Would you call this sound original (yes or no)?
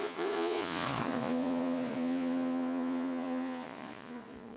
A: no